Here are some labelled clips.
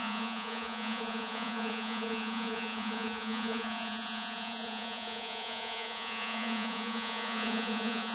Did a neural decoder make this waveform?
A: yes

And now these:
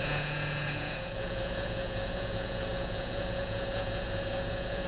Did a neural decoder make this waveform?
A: yes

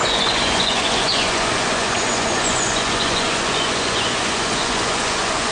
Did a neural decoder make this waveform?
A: yes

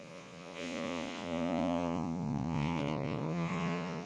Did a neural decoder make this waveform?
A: yes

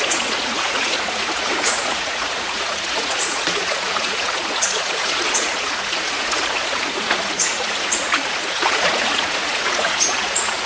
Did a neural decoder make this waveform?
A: yes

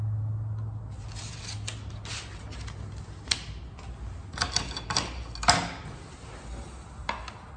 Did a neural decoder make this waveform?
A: no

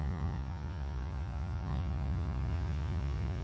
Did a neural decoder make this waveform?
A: yes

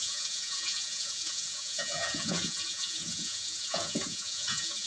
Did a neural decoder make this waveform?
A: yes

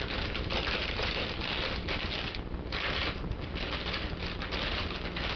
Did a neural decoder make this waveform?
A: no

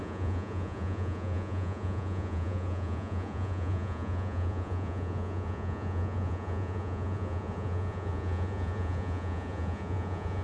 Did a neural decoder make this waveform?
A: yes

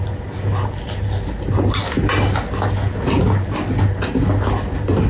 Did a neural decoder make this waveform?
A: no